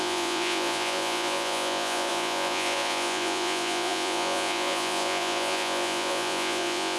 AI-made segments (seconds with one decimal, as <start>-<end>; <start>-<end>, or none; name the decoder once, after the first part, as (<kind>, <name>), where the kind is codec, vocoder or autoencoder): 0.0-7.0 (vocoder, Vocos)